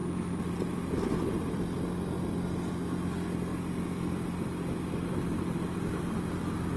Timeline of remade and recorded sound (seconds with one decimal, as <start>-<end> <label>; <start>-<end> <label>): 0.0-6.8 recorded